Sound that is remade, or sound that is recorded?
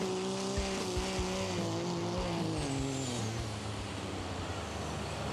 recorded